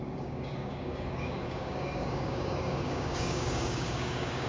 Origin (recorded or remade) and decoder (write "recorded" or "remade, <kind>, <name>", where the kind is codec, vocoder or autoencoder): remade, codec, DAC